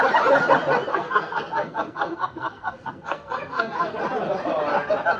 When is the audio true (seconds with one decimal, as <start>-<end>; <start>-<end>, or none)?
0.0-0.9; 4.0-5.2